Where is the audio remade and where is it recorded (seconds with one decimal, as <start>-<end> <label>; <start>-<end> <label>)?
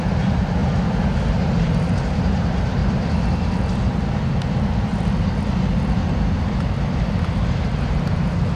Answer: 0.0-0.6 remade; 0.6-1.3 recorded; 1.3-2.8 remade; 2.8-4.0 recorded; 4.0-4.9 remade; 4.9-7.5 recorded; 7.5-8.6 remade